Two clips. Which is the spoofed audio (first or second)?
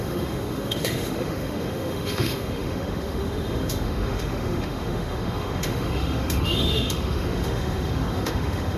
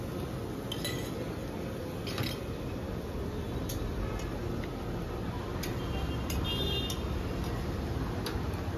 first